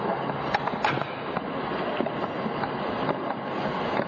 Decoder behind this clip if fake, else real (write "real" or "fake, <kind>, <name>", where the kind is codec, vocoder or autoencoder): real